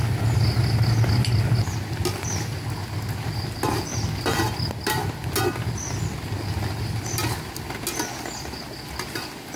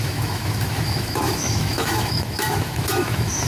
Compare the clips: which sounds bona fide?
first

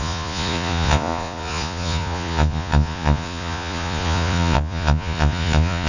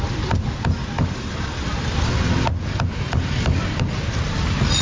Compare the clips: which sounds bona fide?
second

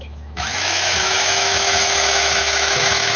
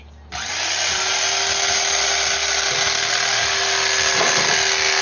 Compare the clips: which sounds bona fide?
second